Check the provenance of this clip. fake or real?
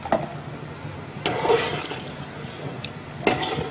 real